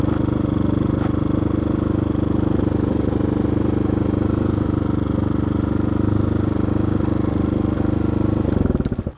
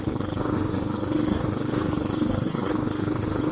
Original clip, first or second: first